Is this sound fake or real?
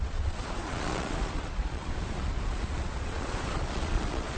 fake